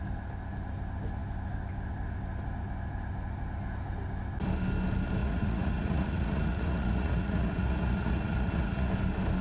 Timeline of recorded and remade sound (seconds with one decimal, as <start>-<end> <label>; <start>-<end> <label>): 0.0-5.2 recorded; 5.2-8.9 remade; 8.9-9.4 recorded